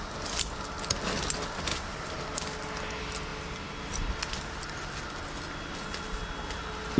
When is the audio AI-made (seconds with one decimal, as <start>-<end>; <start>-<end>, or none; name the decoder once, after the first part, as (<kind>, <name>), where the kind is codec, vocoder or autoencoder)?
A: 1.7-2.2 (vocoder, BigVGAN v2)